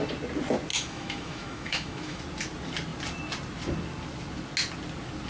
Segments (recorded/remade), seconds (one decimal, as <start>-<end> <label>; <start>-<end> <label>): 0.0-0.7 recorded; 0.7-2.2 remade; 2.2-5.3 recorded